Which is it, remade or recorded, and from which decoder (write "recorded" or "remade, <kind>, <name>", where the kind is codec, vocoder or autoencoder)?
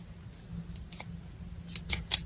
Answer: recorded